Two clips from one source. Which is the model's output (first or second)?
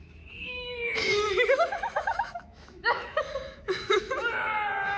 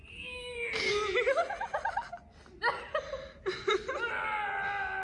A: first